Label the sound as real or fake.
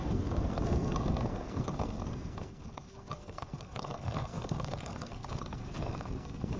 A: fake